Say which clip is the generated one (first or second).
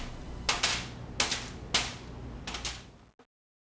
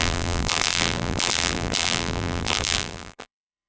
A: second